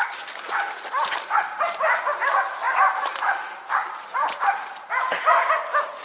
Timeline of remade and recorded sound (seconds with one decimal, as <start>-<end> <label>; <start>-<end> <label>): 0.0-3.8 recorded; 3.8-4.9 remade; 4.9-6.0 recorded